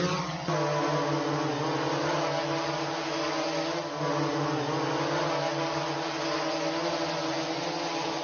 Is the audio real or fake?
real